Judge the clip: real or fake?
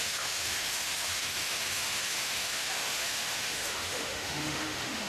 fake